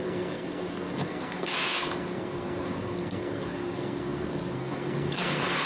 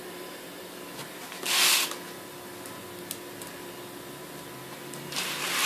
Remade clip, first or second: first